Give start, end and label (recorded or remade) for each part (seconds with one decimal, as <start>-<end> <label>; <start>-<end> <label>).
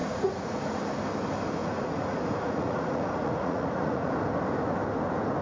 0.0-0.8 remade; 0.8-1.6 recorded; 1.6-4.1 remade; 4.1-5.4 recorded